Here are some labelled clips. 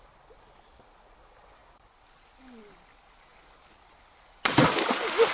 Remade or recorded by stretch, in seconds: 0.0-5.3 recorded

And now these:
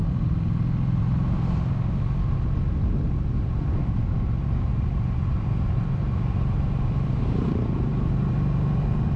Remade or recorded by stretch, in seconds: 0.0-4.7 recorded; 4.7-8.3 remade; 8.3-9.2 recorded

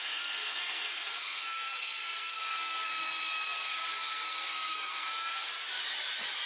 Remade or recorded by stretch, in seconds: 0.0-5.5 remade; 5.5-6.5 recorded

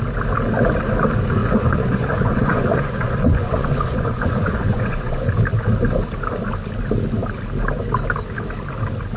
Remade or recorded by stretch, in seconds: 0.0-1.4 recorded; 1.4-5.3 remade; 5.3-9.2 recorded